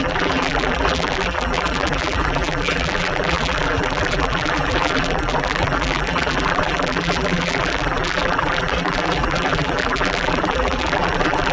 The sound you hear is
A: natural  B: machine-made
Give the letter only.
B